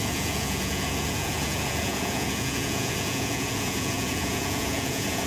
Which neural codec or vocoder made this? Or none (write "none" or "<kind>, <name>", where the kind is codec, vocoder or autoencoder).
vocoder, Vocos